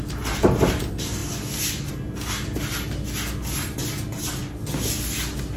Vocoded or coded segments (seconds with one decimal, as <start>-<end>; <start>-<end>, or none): none